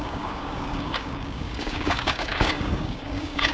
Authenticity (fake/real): fake